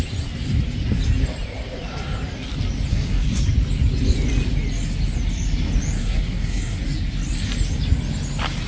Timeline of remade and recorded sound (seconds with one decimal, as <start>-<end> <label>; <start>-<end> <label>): 0.0-2.9 recorded; 2.9-3.5 remade; 3.5-6.0 recorded; 6.0-6.8 remade; 6.8-8.7 recorded